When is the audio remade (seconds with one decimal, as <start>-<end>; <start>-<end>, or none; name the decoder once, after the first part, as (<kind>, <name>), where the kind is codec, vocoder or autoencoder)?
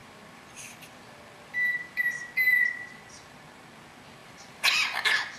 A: 0.0-2.0 (vocoder, BigVGAN v2); 4.2-4.7